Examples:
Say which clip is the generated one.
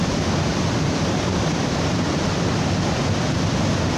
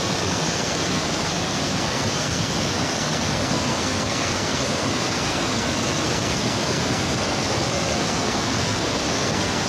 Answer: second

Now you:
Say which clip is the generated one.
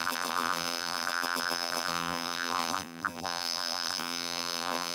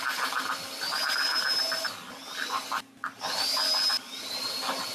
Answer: first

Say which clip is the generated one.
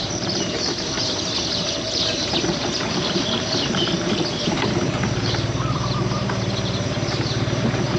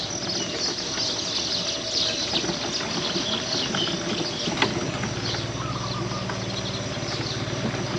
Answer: first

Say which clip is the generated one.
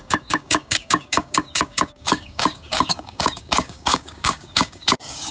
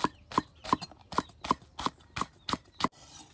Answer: first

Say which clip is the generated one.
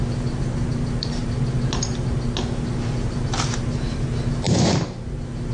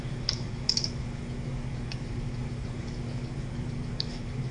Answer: second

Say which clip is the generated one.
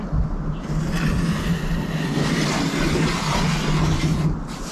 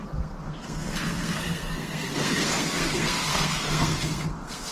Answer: second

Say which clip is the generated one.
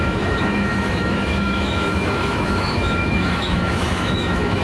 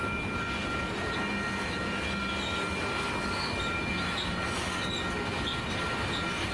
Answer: first